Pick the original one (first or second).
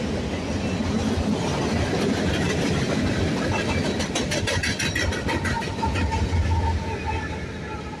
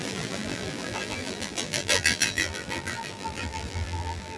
first